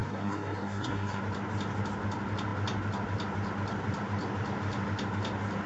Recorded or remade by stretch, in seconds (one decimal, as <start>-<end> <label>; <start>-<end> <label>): 0.0-1.2 remade; 1.2-5.7 recorded

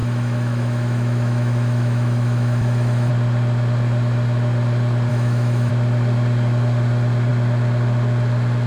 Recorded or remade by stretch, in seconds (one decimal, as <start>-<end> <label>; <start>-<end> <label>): 0.0-3.1 remade; 3.1-5.1 recorded; 5.1-5.7 remade; 5.7-8.7 recorded

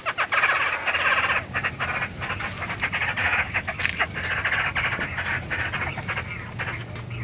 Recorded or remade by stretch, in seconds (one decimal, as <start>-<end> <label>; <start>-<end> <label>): 0.0-3.2 recorded; 3.2-3.8 remade; 3.8-7.2 recorded

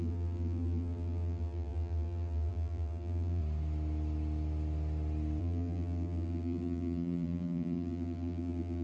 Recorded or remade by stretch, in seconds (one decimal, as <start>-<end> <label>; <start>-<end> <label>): 0.0-3.4 remade; 3.4-5.4 recorded; 5.4-8.8 remade

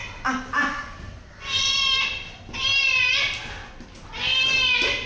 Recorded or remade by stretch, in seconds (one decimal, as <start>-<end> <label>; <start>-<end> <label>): 0.0-3.4 remade; 3.4-4.0 recorded; 4.0-5.1 remade

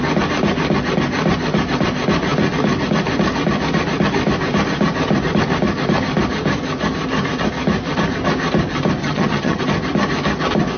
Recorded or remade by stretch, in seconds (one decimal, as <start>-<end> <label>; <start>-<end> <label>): 0.0-9.0 recorded; 9.0-9.6 remade; 9.6-10.8 recorded